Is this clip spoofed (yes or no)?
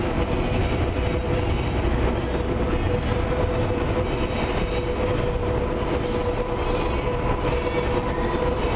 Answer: no